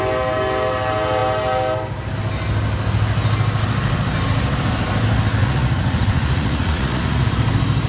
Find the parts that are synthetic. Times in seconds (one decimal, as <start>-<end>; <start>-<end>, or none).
5.4-7.3